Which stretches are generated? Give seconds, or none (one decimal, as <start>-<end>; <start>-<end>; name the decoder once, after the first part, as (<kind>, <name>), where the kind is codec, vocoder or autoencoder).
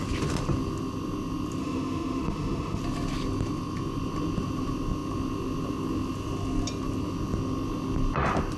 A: 1.6-2.8 (autoencoder, DAC-VAE)